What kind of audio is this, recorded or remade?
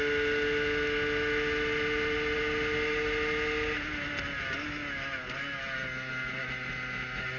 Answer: recorded